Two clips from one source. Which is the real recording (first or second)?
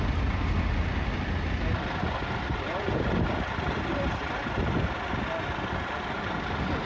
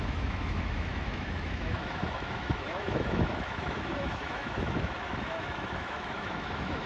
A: first